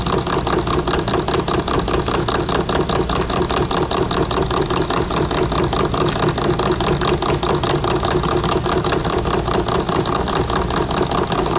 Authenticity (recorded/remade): recorded